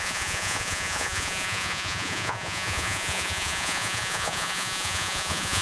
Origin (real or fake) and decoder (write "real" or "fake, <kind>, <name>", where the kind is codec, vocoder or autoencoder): fake, vocoder, Vocos